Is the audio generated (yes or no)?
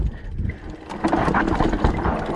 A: no